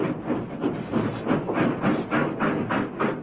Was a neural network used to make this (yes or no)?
no